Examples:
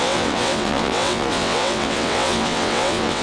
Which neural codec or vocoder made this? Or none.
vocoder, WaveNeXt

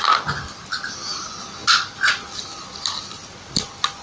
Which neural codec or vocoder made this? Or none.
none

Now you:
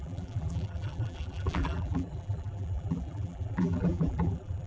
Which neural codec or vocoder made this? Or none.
vocoder, BigVGAN v2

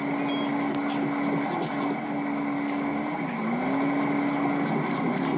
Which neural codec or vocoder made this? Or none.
none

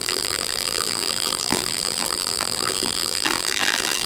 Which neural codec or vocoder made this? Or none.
vocoder, BigVGAN v2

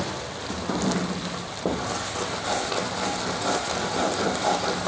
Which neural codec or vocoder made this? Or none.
none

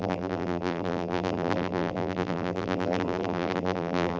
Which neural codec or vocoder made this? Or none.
vocoder, BigVGAN v2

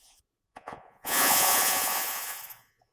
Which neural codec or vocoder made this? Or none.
vocoder, Vocos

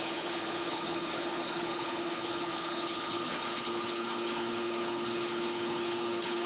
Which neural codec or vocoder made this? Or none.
codec, HILCodec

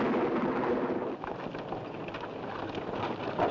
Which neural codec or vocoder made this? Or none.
none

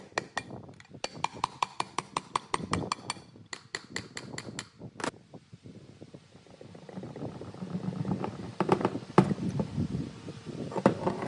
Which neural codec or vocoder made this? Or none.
none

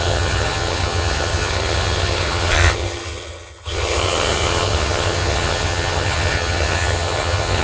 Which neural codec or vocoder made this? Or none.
vocoder, HiFi-GAN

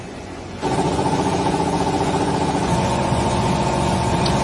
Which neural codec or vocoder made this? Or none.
vocoder, Vocos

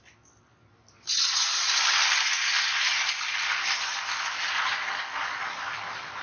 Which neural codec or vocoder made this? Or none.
none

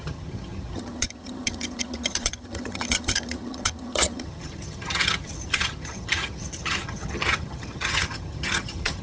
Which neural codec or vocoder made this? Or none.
vocoder, HiFi-GAN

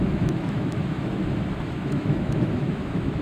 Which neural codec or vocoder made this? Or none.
autoencoder, DAC-VAE